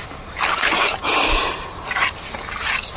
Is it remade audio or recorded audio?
recorded